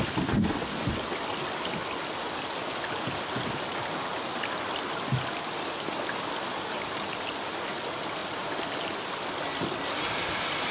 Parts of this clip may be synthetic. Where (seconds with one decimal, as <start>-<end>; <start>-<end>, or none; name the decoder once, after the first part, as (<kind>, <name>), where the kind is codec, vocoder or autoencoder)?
none